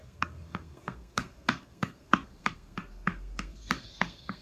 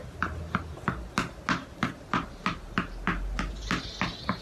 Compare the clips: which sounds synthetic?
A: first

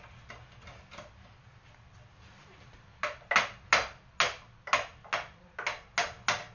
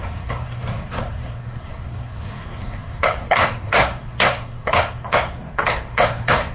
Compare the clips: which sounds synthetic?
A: second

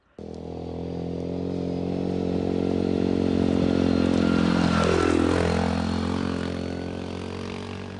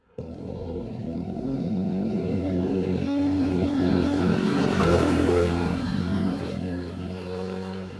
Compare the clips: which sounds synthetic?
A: second